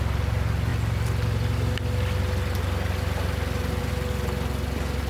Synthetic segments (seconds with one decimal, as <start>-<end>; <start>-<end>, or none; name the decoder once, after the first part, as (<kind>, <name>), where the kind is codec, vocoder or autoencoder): none

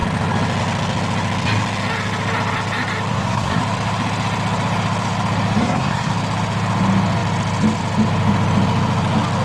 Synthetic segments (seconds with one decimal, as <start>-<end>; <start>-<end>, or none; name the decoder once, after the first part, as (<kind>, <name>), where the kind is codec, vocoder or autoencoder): 3.1-3.6 (codec, SNAC); 5.6-6.1